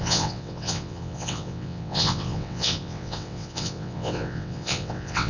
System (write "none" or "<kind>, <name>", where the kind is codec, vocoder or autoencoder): vocoder, WaveNeXt